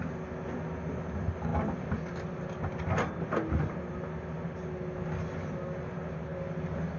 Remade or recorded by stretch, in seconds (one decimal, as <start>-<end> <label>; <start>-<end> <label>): 0.0-7.0 recorded